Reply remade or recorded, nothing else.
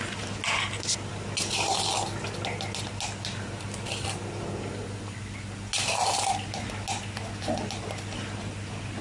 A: recorded